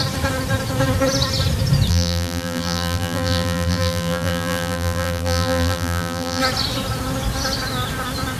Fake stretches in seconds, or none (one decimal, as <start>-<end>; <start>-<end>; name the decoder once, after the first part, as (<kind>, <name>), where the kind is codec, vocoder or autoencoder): 1.9-6.4 (vocoder, BigVGAN v2)